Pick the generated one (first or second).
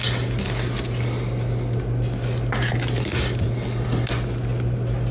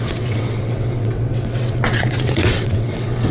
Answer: second